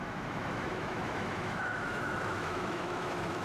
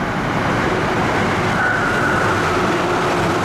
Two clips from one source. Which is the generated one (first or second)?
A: first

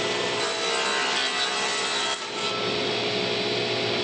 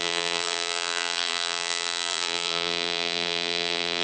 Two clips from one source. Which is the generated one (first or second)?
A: second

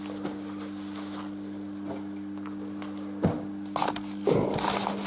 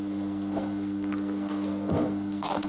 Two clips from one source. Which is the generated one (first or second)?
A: second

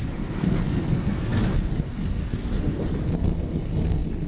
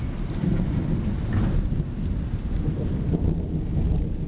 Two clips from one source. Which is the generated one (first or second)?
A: first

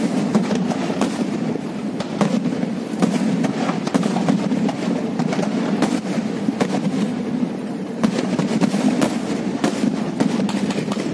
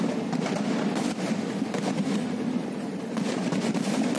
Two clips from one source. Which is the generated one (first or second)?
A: first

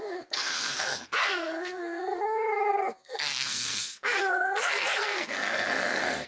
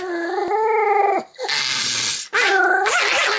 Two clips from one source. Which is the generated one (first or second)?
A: first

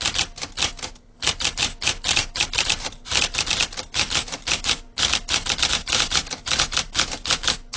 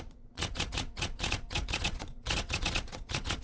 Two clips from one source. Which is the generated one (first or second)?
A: second